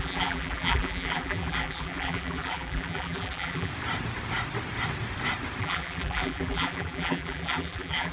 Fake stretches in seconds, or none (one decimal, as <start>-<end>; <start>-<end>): 0.0-3.7; 5.6-8.1